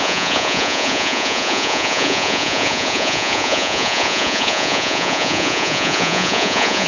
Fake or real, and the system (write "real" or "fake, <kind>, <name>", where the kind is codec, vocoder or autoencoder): fake, vocoder, Vocos